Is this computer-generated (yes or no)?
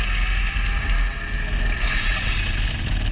no